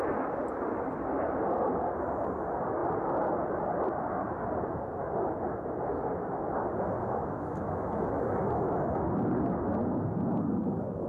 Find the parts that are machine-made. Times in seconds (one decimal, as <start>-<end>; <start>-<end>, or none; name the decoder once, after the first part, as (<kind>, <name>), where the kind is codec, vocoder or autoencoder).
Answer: none